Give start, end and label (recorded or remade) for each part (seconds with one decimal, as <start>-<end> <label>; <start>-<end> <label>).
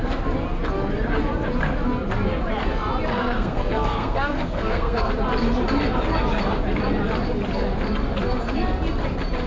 0.0-3.1 recorded; 3.1-5.1 remade; 5.1-9.5 recorded